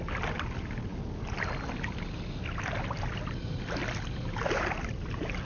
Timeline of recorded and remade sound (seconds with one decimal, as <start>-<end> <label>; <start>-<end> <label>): 0.0-5.4 recorded